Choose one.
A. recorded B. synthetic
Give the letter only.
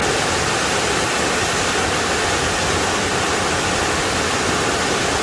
A